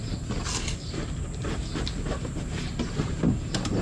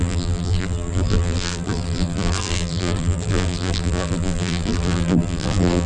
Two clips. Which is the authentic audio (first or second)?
first